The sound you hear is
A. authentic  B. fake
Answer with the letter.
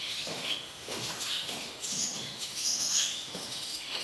B